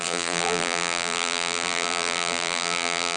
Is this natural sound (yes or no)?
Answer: no